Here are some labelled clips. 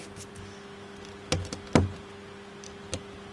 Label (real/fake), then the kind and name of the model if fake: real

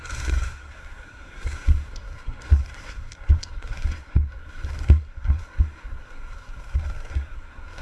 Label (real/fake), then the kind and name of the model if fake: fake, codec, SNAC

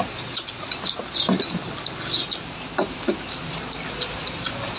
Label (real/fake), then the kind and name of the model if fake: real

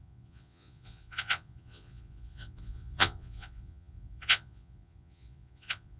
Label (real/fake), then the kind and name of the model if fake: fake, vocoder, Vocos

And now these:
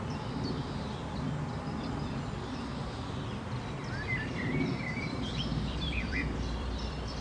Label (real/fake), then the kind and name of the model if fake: fake, vocoder, BigVGAN v2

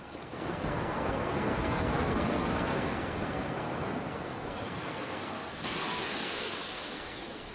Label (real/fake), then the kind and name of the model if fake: fake, codec, SNAC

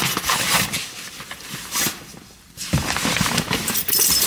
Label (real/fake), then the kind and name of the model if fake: fake, vocoder, BigVGAN v2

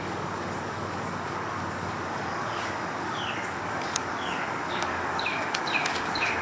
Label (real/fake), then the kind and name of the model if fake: fake, codec, DAC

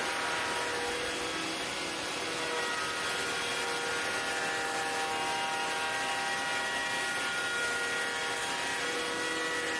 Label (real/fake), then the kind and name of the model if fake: real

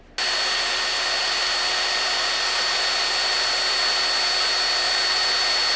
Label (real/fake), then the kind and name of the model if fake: real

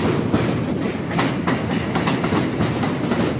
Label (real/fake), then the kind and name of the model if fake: real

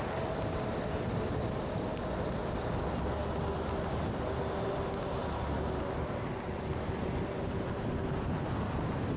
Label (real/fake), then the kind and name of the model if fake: real